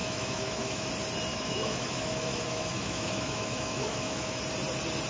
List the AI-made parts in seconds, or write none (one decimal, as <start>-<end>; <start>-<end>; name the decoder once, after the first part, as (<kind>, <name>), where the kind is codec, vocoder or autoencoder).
0.0-0.9 (autoencoder, DAC-VAE); 1.3-4.4